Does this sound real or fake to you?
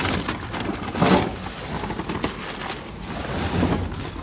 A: real